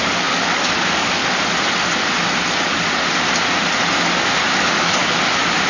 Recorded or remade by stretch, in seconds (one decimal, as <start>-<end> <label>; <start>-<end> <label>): 0.0-1.2 remade; 1.2-4.6 recorded; 4.6-5.0 remade; 5.0-5.7 recorded